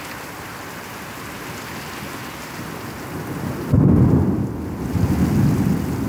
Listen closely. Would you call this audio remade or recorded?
recorded